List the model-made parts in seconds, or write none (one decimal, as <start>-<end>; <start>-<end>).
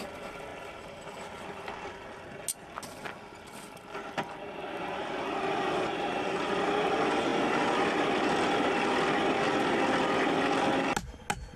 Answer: none